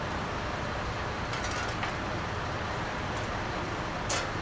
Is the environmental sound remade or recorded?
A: recorded